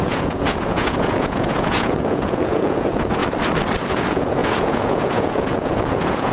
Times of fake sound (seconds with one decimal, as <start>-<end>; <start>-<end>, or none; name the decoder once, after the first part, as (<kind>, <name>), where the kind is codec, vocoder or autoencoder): 0.0-3.2 (vocoder, Vocos); 3.9-6.3